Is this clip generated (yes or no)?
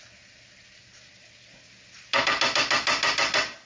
no